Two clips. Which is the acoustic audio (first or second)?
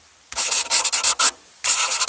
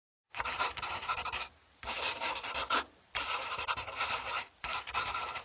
first